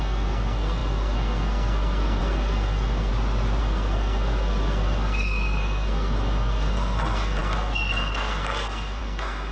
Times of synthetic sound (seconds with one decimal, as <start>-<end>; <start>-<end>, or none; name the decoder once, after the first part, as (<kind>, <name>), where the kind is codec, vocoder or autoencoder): 0.0-3.1 (codec, SNAC); 3.6-9.5